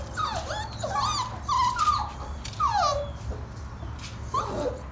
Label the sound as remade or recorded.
recorded